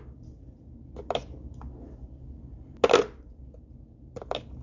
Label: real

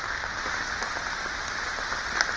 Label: real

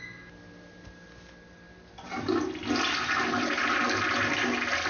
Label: real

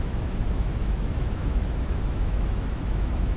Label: fake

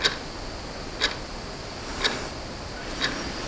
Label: real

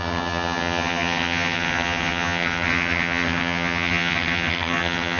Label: fake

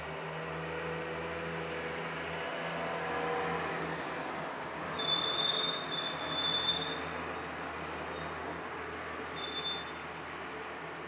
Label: real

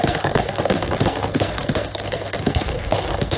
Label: fake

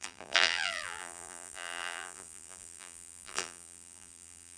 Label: fake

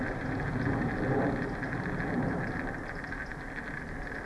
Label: real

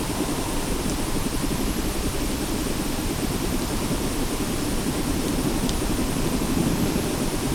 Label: real